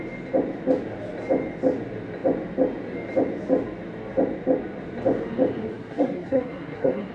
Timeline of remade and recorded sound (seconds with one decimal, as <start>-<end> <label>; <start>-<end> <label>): 0.0-5.7 recorded; 5.7-7.1 remade